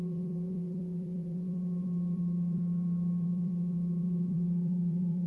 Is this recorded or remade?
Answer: remade